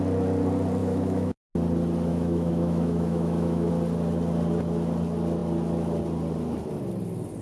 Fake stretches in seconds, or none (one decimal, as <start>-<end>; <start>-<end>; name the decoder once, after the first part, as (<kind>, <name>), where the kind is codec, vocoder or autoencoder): 0.8-1.4 (autoencoder, DAC-VAE); 2.1-3.7